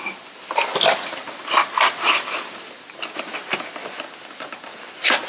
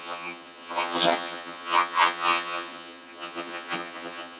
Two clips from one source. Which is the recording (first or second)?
first